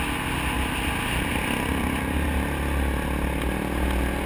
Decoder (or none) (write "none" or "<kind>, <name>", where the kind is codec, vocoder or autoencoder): none